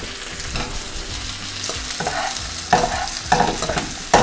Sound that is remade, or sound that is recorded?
recorded